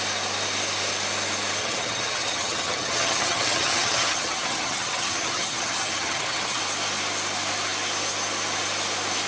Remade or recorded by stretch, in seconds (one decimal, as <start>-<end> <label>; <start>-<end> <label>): 0.0-1.6 recorded; 1.6-6.6 remade; 6.6-9.3 recorded